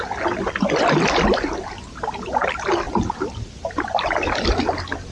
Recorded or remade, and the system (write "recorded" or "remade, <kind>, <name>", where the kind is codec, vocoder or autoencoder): recorded